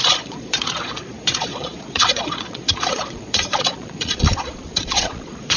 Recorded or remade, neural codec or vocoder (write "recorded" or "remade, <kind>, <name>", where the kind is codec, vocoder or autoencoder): remade, vocoder, Vocos